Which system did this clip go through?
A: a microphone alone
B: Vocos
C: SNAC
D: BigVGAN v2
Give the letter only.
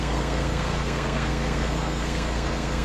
C